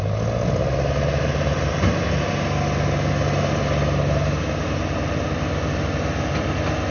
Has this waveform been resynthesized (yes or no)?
no